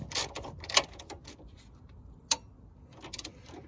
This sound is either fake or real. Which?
real